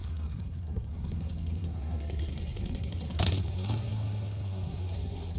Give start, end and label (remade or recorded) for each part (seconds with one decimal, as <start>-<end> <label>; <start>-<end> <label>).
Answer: 0.0-5.4 remade